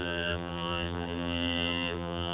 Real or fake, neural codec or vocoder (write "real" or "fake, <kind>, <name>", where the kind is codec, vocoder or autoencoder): fake, vocoder, BigVGAN v2